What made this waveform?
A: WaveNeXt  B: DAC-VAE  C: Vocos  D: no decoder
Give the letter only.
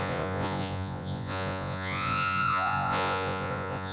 C